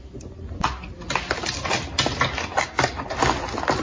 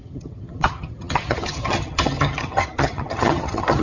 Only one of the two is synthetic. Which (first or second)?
second